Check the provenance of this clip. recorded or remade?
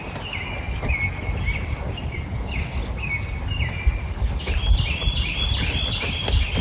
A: recorded